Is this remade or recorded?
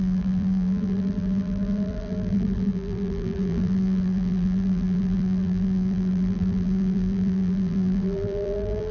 remade